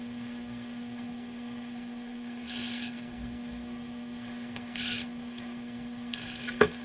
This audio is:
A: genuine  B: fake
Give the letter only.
B